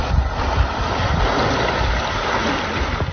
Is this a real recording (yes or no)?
yes